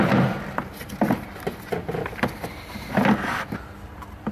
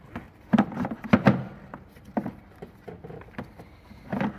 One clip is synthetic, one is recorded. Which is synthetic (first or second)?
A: second